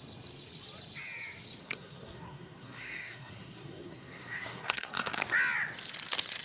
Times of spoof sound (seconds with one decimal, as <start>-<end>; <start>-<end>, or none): 1.6-5.2